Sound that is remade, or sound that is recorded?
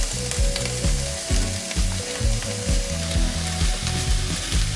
recorded